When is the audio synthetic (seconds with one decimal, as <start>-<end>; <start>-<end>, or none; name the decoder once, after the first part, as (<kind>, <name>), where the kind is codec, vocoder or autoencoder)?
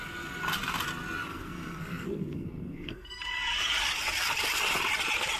1.3-3.2 (codec, SNAC)